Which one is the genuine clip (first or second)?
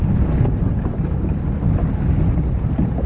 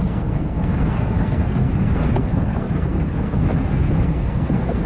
first